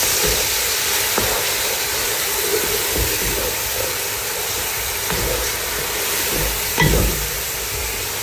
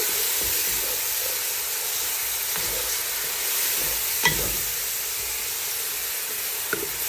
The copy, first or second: first